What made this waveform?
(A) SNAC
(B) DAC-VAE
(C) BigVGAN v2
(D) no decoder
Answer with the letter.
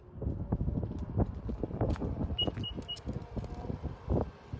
D